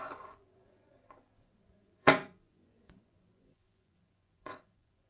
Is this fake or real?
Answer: fake